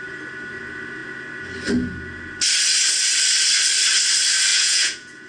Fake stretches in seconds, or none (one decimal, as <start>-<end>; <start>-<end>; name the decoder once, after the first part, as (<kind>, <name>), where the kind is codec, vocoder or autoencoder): 4.5-5.3 (vocoder, Vocos)